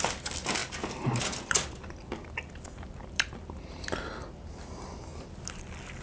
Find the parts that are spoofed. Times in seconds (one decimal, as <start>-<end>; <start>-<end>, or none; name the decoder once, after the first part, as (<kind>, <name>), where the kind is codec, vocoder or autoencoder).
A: none